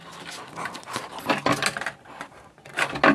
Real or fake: real